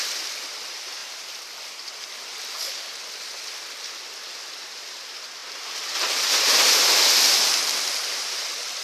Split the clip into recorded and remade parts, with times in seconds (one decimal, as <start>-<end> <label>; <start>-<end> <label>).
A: 0.0-1.0 remade; 1.0-3.8 recorded; 3.8-8.8 remade